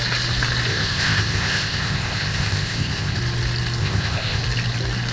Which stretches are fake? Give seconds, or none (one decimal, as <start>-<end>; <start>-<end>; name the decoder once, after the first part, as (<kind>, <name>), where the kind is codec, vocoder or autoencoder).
0.7-3.2 (codec, ZipCodec); 3.8-4.4